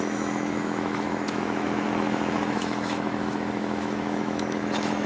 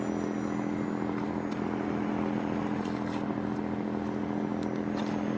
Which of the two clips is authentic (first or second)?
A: second